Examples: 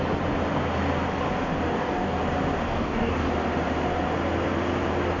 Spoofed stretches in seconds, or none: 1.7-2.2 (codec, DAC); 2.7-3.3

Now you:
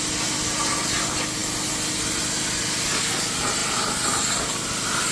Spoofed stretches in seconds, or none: none

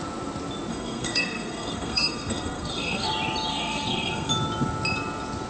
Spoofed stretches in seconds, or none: 0.7-3.1 (codec, SNAC); 3.5-4.3

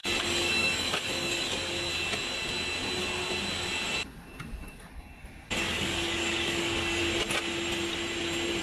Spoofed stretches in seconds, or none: 0.0-1.9 (codec, DAC); 5.6-7.0

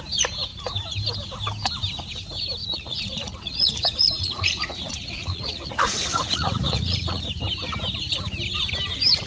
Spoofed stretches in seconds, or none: 2.6-7.2 (vocoder, Vocos)